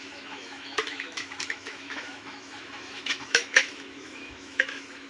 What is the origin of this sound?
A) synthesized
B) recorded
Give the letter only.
A